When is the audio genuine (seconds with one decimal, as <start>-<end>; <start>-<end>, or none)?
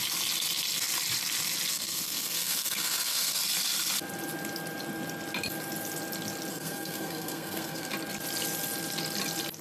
0.0-1.7; 3.4-6.5; 7.9-9.6